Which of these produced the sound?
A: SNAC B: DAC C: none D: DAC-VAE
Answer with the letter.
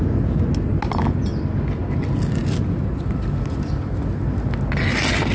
C